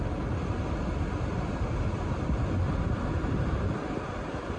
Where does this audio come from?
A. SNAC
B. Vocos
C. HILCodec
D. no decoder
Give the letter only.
D